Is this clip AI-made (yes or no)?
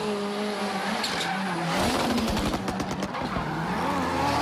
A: no